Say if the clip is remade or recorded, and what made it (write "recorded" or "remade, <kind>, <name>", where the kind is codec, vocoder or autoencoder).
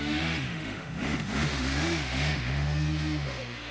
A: remade, autoencoder, DAC-VAE